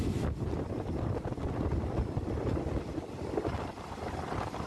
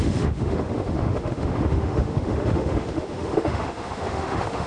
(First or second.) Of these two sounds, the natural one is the first